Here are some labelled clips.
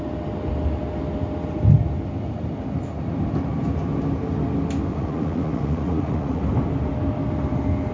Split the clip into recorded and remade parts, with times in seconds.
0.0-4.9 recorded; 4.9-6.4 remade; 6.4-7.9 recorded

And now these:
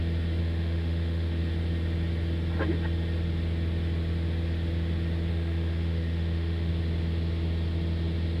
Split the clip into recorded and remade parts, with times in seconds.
0.0-0.4 recorded; 0.4-1.4 remade; 1.4-5.3 recorded; 5.3-6.7 remade; 6.7-8.4 recorded

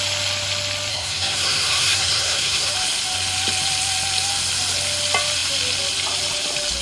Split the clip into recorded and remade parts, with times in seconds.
0.0-0.9 recorded; 0.9-2.7 remade; 2.7-6.8 recorded